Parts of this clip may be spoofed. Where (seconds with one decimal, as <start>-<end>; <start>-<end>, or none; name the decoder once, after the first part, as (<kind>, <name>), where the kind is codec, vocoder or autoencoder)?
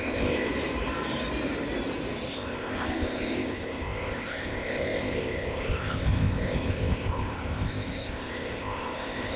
0.0-0.5 (codec, ZipCodec); 2.3-9.4